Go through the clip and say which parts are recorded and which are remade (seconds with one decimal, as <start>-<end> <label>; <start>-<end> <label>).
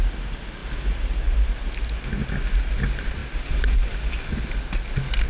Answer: 0.0-5.3 recorded